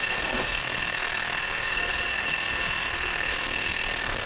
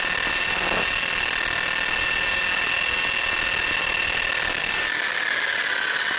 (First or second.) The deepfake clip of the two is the first